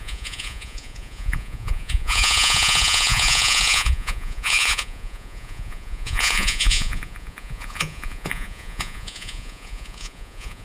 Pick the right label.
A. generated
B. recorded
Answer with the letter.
A